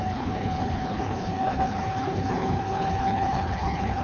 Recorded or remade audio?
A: remade